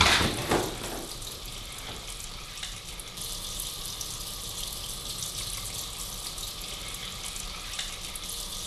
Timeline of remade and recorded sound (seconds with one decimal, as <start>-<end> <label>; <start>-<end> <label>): 0.0-0.4 remade; 0.4-1.2 recorded; 1.2-8.7 remade